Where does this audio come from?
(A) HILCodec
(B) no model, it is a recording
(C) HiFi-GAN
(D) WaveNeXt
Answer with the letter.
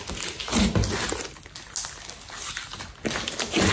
B